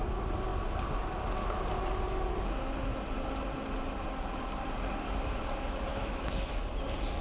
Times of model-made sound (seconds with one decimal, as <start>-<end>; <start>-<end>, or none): 5.9-6.6